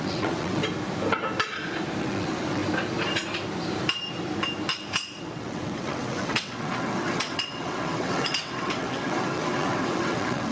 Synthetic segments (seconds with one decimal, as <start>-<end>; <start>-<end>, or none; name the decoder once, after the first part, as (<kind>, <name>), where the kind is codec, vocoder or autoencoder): 0.0-0.6 (vocoder, WaveNeXt); 2.0-2.6; 5.2-10.5